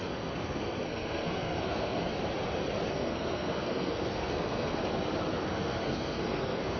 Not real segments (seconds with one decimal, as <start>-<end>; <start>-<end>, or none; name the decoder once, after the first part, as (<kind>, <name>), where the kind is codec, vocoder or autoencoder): 0.0-2.1 (codec, SNAC); 2.9-4.8; 5.4-6.8